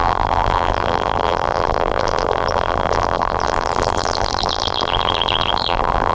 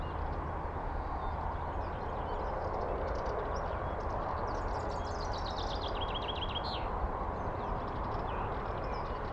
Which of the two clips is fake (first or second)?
first